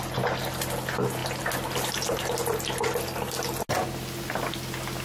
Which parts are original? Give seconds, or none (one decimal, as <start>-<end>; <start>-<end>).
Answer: 0.0-5.0